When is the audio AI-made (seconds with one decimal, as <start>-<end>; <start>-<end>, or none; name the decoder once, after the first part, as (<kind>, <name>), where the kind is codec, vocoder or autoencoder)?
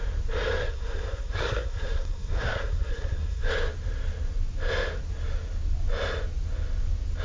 0.6-3.5 (codec, SNAC)